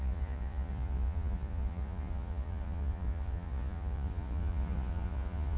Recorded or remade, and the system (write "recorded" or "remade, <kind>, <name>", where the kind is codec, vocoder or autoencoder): remade, vocoder, Vocos